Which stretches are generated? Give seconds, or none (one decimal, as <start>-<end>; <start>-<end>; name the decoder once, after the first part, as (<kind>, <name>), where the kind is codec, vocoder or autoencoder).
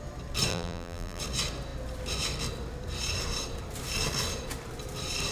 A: 0.5-1.2 (vocoder, BigVGAN v2)